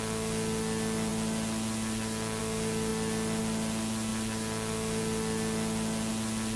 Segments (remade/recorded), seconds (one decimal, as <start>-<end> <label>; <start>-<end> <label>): 0.0-6.6 recorded